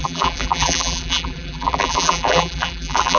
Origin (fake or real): fake